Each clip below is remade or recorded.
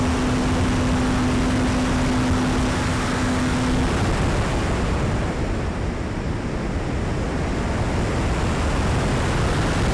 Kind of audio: recorded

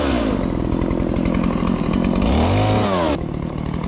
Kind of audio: recorded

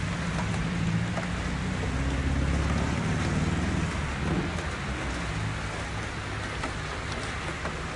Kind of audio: recorded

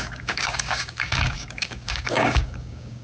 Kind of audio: remade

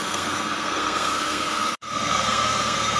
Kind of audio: remade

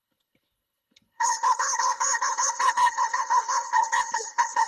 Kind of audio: remade